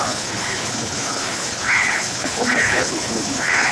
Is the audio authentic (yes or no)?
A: no